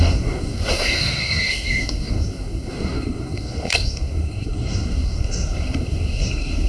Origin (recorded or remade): remade